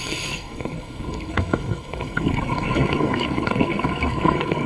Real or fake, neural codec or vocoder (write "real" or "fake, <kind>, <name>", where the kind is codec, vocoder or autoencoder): fake, codec, SNAC